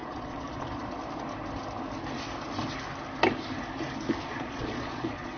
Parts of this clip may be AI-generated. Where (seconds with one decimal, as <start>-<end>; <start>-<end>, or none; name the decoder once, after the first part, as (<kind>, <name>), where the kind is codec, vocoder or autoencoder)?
0.0-1.0 (vocoder, Vocos); 4.2-5.4